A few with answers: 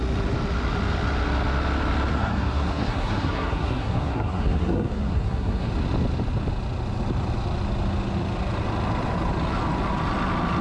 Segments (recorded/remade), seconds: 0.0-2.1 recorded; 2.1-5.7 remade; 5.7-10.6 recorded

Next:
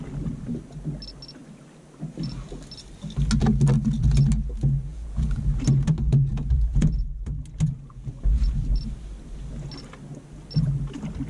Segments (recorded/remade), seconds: 0.0-4.9 recorded; 4.9-5.4 remade; 5.4-6.3 recorded; 6.3-6.9 remade; 6.9-11.3 recorded

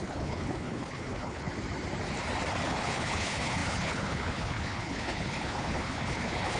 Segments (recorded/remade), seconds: 0.0-1.5 remade; 1.5-2.7 recorded; 2.7-6.6 remade

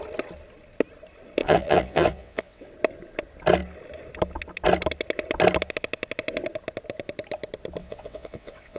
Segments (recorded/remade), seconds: 0.0-1.4 recorded; 1.4-2.7 remade; 2.7-7.8 recorded; 7.8-8.8 remade

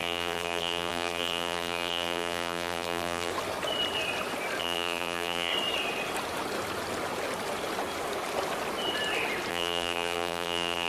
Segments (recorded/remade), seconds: 0.0-3.3 remade; 3.3-4.6 recorded; 4.6-5.5 remade; 5.5-9.5 recorded; 9.5-10.9 remade